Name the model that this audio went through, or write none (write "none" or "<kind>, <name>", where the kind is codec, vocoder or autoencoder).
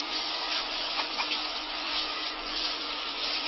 vocoder, Vocos